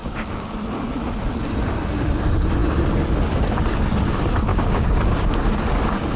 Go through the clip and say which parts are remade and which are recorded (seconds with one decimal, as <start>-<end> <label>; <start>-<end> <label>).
0.0-0.5 remade; 0.5-4.5 recorded; 4.5-5.5 remade; 5.5-6.2 recorded